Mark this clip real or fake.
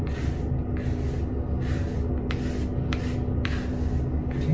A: real